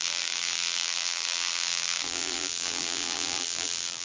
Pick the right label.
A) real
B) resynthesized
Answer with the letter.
B